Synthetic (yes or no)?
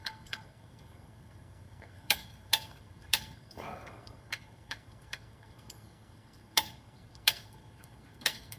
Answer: yes